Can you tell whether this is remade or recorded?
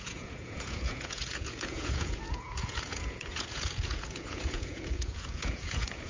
remade